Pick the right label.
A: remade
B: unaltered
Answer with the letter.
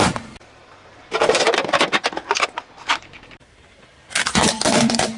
A